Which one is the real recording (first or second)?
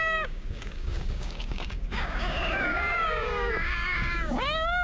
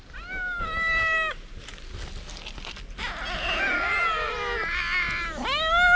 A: second